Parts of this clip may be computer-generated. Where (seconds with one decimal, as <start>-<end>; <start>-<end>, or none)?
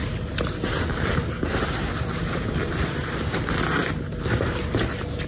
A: 0.0-3.2; 3.8-4.5